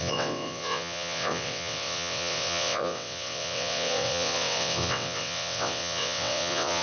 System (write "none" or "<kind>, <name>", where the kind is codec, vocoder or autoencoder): vocoder, WaveNeXt